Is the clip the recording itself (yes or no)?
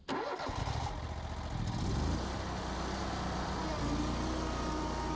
yes